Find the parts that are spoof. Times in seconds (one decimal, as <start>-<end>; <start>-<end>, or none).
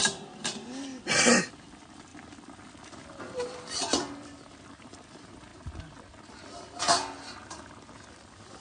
0.0-0.9; 1.5-5.5; 8.1-8.6